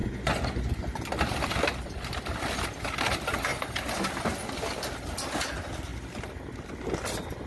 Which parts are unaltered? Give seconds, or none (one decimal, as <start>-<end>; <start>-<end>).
0.7-7.5